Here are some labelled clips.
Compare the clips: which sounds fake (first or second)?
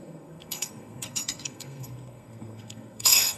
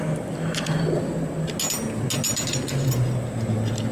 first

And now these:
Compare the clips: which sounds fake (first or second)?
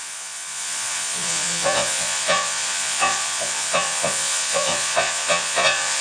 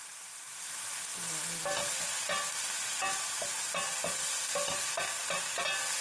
first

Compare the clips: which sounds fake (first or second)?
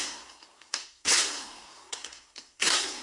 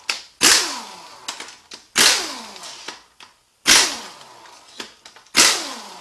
first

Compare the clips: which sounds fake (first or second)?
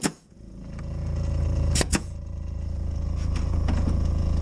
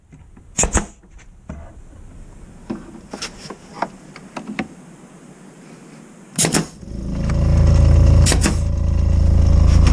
first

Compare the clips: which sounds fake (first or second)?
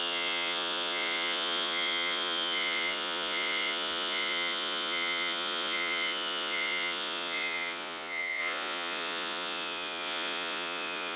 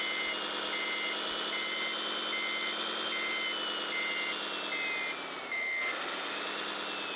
first